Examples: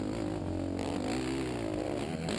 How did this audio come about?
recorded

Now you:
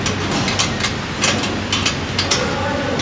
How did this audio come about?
recorded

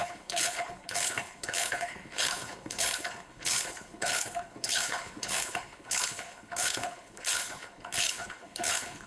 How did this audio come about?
remade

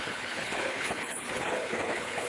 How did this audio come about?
remade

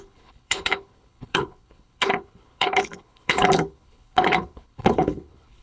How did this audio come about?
remade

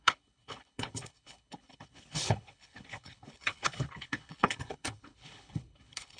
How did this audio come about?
remade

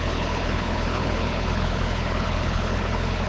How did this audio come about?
remade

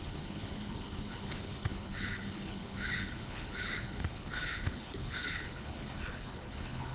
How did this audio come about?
remade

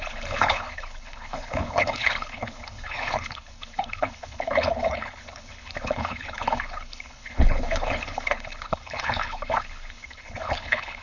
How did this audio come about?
remade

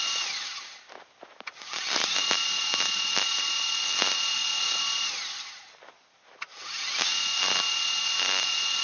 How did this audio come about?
recorded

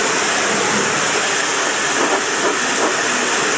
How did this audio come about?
recorded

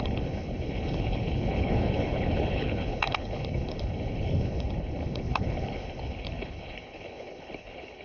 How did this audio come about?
remade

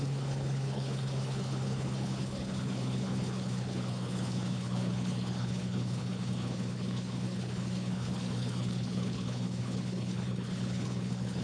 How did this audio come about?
remade